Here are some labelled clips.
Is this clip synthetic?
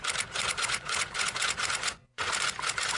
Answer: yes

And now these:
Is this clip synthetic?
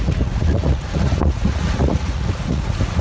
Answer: yes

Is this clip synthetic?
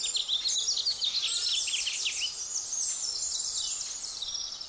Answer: no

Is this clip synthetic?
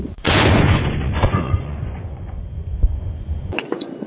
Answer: yes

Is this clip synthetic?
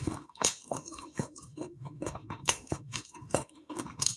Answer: yes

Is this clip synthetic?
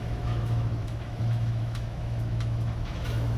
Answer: yes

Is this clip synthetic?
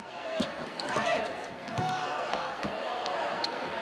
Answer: yes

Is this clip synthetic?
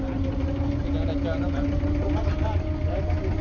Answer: no